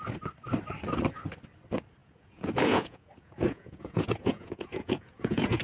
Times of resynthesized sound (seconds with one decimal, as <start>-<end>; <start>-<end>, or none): 2.0-5.6